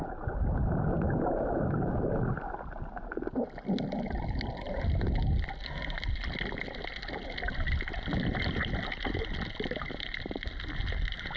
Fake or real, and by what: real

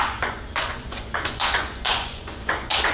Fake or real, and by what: fake, vocoder, Vocos